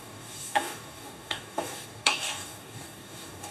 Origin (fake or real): fake